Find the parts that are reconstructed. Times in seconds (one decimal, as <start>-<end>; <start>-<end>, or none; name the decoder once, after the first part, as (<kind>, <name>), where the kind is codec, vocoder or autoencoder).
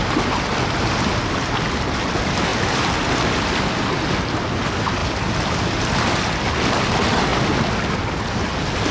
none